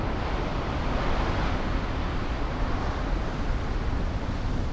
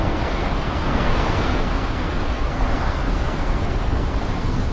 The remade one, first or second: second